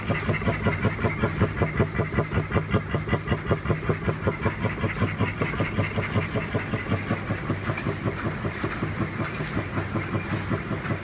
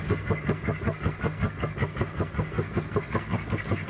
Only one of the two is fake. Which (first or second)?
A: second